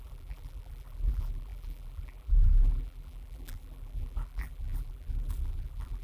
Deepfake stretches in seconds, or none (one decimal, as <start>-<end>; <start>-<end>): 0.0-6.0